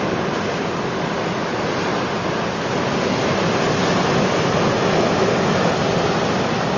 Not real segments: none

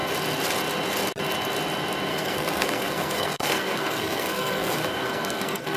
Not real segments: 2.1-5.8 (codec, SNAC)

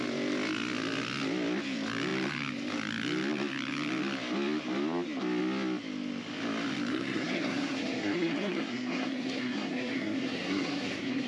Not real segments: 6.9-11.3 (codec, SNAC)

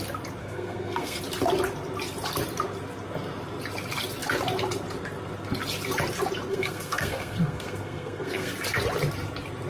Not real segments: 0.4-1.2 (codec, SNAC); 6.5-8.5